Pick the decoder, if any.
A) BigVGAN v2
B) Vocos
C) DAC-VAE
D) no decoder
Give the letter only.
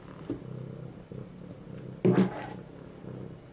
D